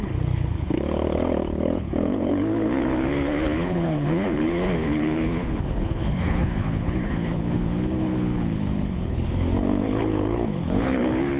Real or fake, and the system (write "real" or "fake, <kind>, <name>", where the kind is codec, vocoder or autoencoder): fake, codec, HILCodec